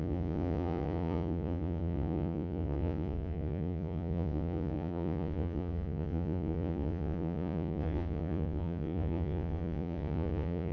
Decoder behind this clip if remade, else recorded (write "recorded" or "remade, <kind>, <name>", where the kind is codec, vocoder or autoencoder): remade, vocoder, Vocos